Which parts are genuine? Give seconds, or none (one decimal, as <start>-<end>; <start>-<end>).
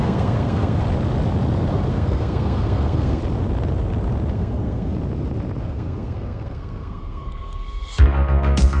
0.8-1.7; 3.2-4.3; 4.9-5.6